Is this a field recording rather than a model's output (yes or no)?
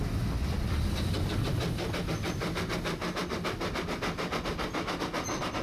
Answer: yes